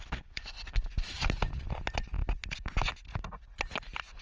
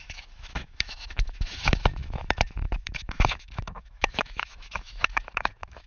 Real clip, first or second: first